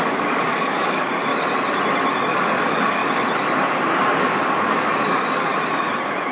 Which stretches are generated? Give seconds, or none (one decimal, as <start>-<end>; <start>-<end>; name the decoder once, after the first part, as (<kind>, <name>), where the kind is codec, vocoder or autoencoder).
0.0-1.3 (codec, DAC); 2.3-3.0; 4.2-5.5